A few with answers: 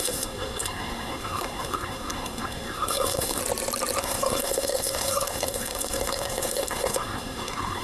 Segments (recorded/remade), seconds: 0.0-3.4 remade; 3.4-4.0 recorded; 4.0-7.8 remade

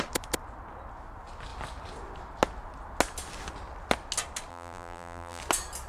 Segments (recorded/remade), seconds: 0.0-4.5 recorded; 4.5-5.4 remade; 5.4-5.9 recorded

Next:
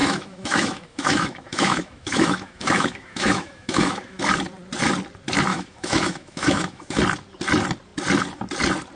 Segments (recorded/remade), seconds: 0.0-4.2 remade; 4.2-5.5 recorded; 5.5-7.0 remade; 7.0-9.0 recorded